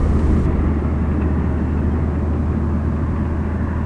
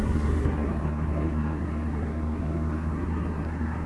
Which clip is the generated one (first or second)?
second